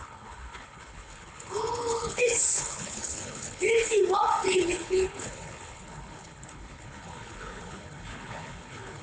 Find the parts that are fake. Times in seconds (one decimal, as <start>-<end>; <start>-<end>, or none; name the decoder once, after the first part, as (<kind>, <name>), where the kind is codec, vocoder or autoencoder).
0.0-9.0 (codec, HILCodec)